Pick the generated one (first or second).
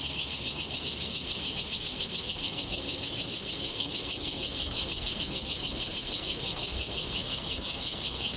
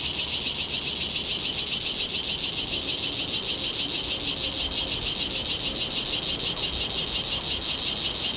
first